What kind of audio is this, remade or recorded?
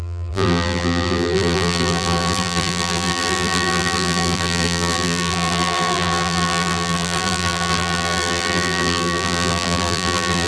remade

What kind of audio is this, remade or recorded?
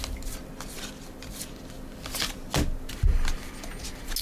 recorded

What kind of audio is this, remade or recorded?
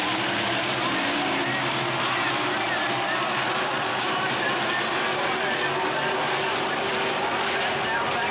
recorded